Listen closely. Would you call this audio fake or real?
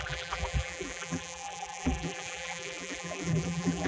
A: fake